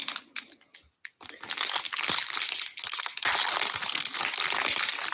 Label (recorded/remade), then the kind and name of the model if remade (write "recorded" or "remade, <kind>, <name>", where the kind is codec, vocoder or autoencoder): recorded